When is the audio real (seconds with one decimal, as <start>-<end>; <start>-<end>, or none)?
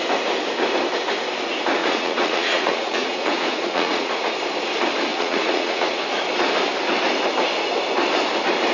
0.0-1.8; 4.3-5.1; 6.0-8.7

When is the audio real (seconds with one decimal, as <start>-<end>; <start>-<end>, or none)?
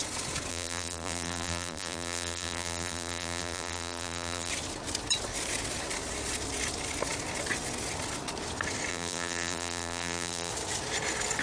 0.0-0.5; 4.5-8.9; 10.5-11.4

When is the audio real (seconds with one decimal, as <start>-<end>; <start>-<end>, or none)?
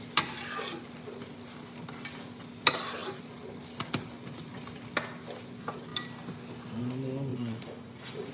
0.0-7.3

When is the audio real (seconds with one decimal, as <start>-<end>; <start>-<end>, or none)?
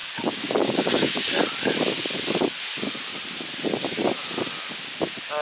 1.4-5.4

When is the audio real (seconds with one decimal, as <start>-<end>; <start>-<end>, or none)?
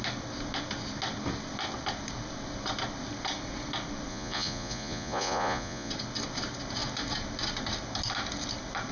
0.0-4.1; 5.9-8.9